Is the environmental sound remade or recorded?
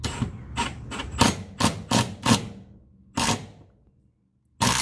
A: recorded